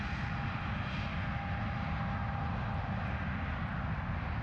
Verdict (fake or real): real